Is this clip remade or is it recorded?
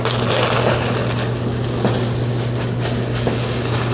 recorded